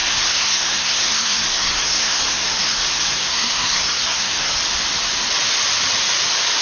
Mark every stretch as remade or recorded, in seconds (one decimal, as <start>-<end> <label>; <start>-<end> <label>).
0.0-4.6 remade; 4.6-6.6 recorded